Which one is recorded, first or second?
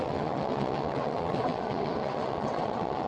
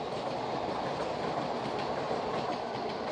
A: second